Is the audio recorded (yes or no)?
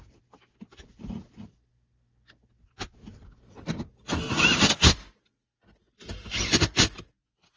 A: yes